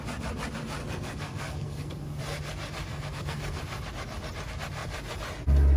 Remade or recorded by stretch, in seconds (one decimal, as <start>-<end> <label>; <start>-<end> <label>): 0.0-0.8 recorded; 0.8-2.2 remade; 2.2-2.9 recorded; 2.9-3.6 remade; 3.6-5.8 recorded